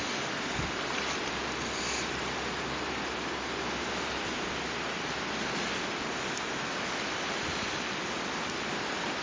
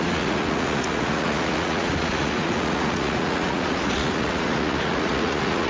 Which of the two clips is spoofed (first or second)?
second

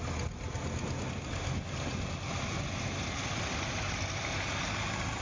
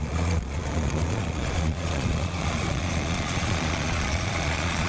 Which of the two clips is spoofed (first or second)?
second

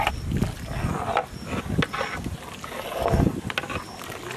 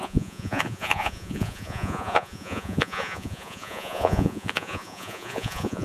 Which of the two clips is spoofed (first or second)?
second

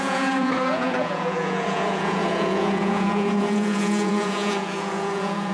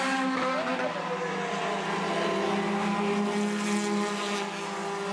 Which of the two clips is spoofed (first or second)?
first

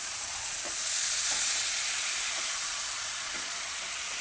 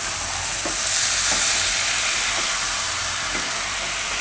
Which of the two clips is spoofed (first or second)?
first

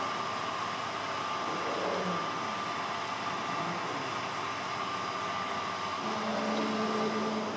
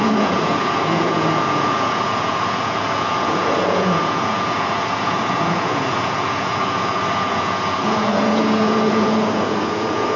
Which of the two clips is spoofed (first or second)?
second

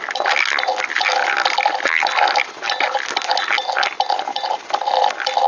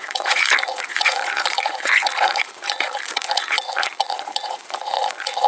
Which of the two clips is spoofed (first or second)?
second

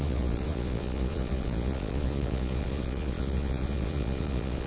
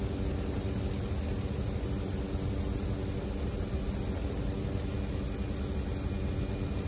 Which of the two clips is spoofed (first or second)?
first